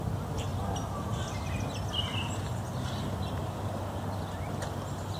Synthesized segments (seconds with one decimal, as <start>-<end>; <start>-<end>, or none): none